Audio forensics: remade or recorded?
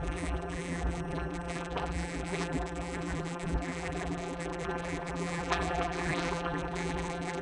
remade